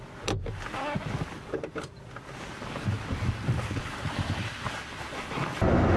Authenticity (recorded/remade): recorded